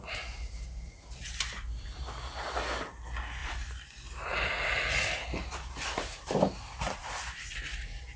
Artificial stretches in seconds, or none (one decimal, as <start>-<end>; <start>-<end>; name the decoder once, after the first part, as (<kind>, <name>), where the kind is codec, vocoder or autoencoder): 1.2-2.0 (vocoder, BigVGAN v2); 3.4-4.4; 5.4-6.2; 7.0-7.5